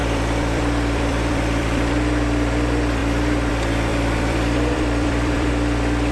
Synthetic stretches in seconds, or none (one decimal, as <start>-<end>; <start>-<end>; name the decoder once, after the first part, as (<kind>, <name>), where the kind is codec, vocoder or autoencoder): 0.0-1.9 (vocoder, BigVGAN v2); 3.9-5.5